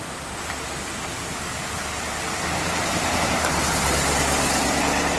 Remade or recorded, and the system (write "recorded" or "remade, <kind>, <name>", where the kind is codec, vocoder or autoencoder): recorded